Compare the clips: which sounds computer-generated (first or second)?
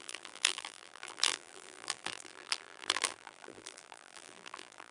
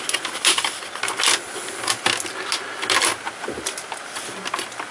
first